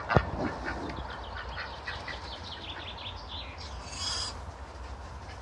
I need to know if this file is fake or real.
real